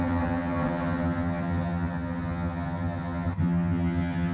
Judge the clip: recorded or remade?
remade